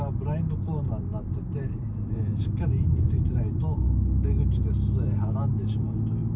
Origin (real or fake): real